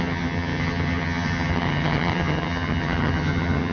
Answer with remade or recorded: remade